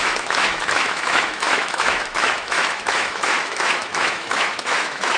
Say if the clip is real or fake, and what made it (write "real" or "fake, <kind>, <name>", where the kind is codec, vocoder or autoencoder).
fake, autoencoder, DAC-VAE